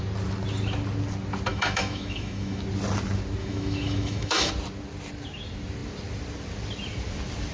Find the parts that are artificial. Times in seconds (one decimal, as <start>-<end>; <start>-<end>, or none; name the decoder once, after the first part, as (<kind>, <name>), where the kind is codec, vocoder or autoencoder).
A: 1.5-2.6 (autoencoder, DAC-VAE); 3.4-4.5